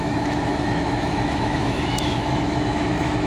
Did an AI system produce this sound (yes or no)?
yes